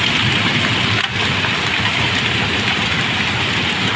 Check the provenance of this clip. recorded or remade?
recorded